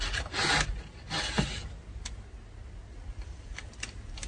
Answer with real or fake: real